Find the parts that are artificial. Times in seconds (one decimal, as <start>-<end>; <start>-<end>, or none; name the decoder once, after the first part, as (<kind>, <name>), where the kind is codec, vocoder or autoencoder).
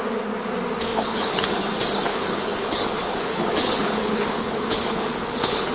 0.9-1.5 (codec, HILCodec); 2.1-5.7